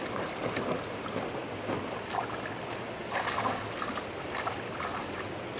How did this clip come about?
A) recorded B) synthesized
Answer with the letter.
A